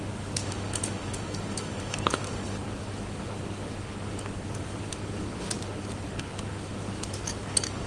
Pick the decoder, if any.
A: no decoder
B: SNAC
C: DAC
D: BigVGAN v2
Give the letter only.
C